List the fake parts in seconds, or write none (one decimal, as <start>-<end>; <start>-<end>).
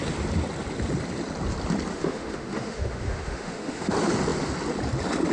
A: 1.9-3.9